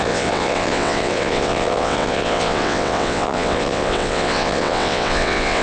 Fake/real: fake